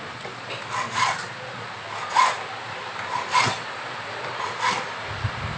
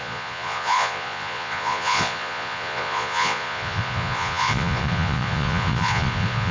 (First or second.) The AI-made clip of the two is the second